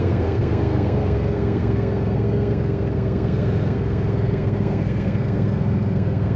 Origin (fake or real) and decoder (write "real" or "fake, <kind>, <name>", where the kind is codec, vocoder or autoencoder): fake, codec, SNAC